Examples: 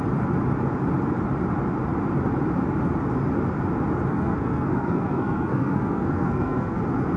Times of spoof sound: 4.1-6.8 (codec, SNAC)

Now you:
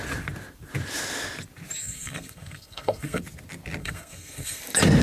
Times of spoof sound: 1.8-3.2 (codec, SNAC); 3.8-4.6

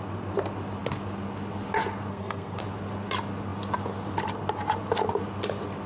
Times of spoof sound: 2.1-2.6 (codec, SNAC)

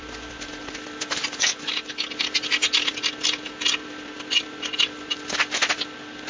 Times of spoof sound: none

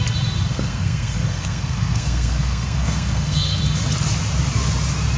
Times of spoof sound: 0.5-3.6 (codec, SNAC)

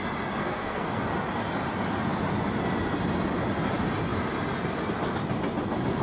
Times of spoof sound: 0.4-1.0 (codec, SNAC)

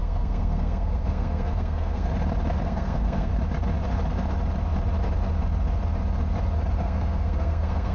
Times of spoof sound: 0.0-2.1 (codec, SNAC); 2.6-3.3; 6.8-7.9